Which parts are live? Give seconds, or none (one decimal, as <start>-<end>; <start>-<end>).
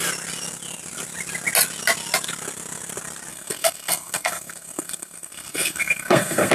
0.0-3.3